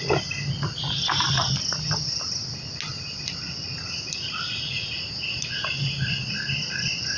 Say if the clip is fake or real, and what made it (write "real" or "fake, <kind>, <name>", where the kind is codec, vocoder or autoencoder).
real